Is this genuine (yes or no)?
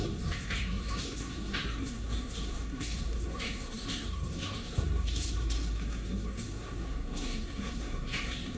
no